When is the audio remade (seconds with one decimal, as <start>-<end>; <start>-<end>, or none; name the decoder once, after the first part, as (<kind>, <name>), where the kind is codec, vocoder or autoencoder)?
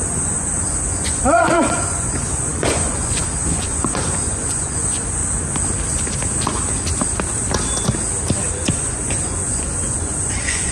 0.0-5.2 (vocoder, Vocos); 8.5-10.7